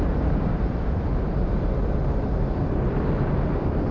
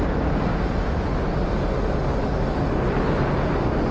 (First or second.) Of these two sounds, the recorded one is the second